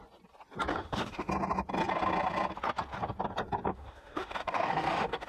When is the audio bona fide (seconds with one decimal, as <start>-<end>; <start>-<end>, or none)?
0.0-0.7; 1.3-3.7